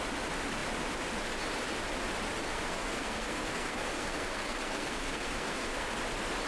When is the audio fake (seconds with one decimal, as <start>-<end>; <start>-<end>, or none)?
2.5-5.9